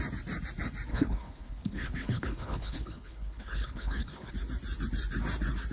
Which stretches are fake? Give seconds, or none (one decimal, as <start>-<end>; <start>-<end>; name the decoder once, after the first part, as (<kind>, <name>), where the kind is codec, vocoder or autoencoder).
0.9-4.3 (codec, HILCodec)